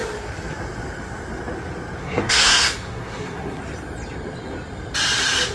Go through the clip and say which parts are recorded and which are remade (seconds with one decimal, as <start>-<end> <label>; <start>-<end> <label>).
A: 0.0-2.0 recorded; 2.0-3.6 remade; 3.6-5.5 recorded